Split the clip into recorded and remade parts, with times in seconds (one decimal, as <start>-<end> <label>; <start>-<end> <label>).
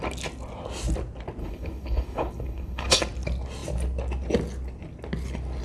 0.0-1.4 recorded; 1.4-3.0 remade; 3.0-5.6 recorded